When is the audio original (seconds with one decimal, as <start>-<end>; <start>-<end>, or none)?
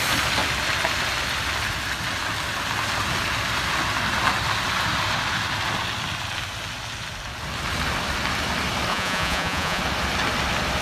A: 0.0-8.9; 9.8-10.8